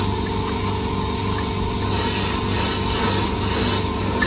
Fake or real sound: real